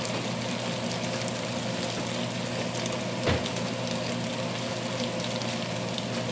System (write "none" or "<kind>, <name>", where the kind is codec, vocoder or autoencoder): none